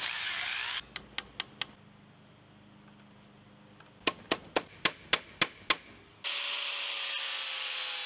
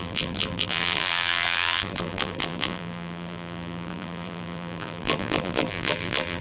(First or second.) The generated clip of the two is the second